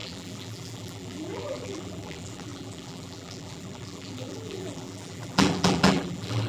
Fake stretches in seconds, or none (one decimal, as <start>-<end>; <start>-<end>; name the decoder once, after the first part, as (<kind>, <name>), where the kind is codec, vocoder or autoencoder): 0.0-6.5 (vocoder, BigVGAN v2)

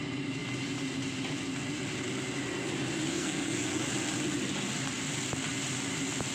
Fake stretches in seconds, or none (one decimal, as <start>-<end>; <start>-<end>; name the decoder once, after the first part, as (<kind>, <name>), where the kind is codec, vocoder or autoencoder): 3.1-3.9 (codec, SNAC)

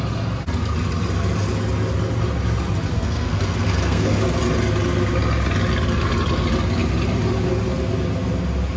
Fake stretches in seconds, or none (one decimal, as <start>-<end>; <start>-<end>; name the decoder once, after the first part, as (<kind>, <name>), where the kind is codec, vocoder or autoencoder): 2.9-4.2 (codec, SNAC)

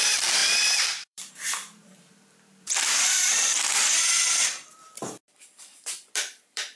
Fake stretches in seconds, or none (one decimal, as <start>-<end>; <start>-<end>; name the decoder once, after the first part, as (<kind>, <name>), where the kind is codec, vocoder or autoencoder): 0.0-6.8 (vocoder, BigVGAN v2)

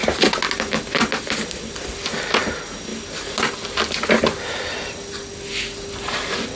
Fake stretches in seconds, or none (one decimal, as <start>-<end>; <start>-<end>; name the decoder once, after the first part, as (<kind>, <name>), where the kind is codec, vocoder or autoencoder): none